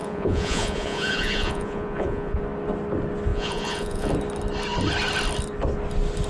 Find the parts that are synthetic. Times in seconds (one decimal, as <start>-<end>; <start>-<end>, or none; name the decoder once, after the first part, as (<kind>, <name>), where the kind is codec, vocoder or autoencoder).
0.0-2.4 (vocoder, Vocos); 3.3-4.1